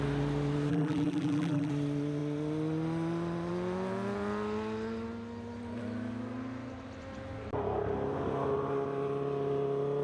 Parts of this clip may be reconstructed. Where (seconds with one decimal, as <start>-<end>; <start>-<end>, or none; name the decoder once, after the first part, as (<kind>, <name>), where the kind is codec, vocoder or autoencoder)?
0.7-1.7 (vocoder, BigVGAN v2)